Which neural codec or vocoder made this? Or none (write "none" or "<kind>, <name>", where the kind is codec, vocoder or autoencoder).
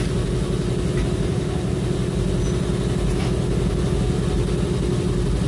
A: none